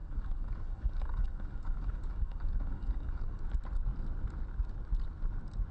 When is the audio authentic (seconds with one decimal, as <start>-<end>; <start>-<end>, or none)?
3.4-5.7